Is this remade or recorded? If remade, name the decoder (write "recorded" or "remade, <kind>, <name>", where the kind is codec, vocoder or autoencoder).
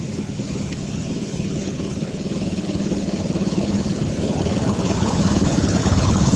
remade, codec, HILCodec